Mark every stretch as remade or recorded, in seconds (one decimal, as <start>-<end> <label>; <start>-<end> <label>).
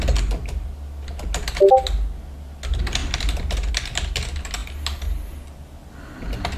0.0-6.6 recorded